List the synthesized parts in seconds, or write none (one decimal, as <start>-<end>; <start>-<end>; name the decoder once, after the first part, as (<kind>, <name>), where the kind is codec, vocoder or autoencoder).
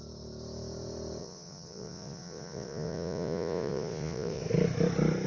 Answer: 1.2-4.4 (vocoder, Vocos)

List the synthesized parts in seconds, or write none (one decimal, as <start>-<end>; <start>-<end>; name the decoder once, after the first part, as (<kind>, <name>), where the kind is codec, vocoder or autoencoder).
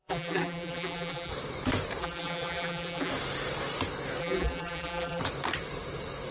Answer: 0.0-1.3 (vocoder, BigVGAN v2); 2.0-3.1; 4.2-5.2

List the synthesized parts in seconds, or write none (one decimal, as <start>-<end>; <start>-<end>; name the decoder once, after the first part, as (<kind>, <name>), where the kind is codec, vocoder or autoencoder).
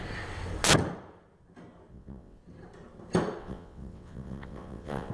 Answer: 1.9-2.4 (vocoder, WaveNeXt); 3.4-5.1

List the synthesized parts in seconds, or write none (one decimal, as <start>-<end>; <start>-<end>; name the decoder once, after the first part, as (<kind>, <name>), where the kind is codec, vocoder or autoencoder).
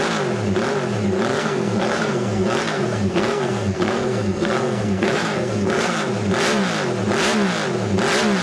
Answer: 1.3-6.1 (codec, SNAC)